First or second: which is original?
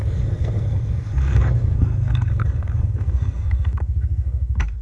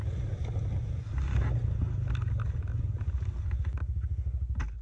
second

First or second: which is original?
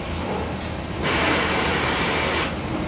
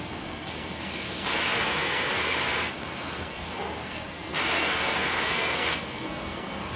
first